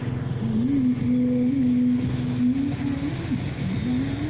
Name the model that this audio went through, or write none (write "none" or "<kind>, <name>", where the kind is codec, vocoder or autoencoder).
none